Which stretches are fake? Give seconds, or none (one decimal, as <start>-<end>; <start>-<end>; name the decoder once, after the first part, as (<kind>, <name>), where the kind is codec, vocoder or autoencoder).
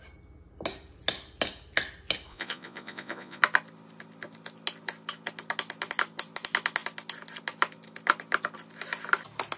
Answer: 2.3-3.4 (vocoder, Vocos)